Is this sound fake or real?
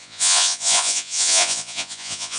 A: fake